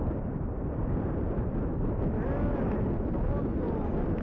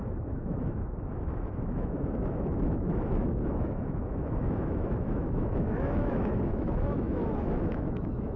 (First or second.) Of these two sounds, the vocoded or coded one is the second